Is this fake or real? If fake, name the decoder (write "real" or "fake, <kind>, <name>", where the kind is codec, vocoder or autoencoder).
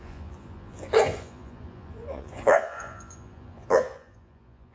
fake, vocoder, Vocos